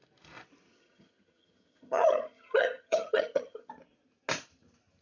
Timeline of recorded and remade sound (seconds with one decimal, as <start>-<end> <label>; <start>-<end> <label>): 0.0-0.7 recorded; 0.7-3.7 remade; 3.7-5.0 recorded